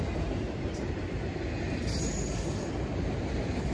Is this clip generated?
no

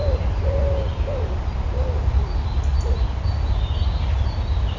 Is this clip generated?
no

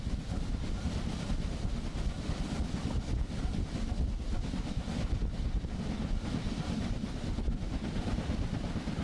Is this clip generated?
no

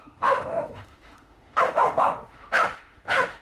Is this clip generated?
yes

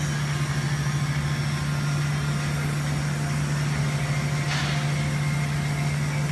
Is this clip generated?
no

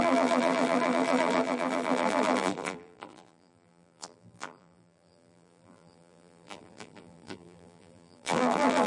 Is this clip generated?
yes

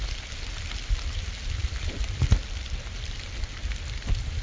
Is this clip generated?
no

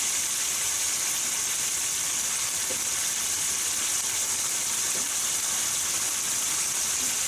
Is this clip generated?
no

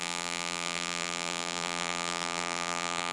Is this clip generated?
yes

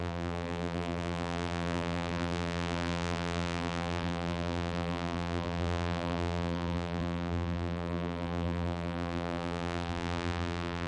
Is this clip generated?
yes